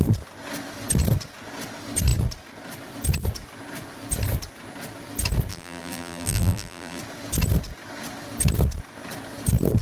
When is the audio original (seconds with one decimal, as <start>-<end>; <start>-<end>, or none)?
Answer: 0.0-5.5; 7.0-9.8